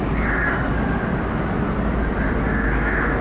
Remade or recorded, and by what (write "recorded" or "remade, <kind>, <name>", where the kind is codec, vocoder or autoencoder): recorded